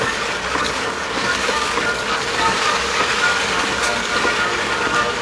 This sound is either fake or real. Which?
fake